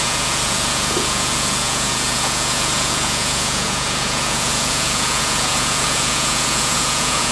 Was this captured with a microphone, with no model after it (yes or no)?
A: no